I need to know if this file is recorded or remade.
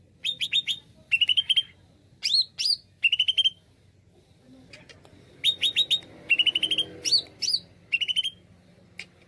recorded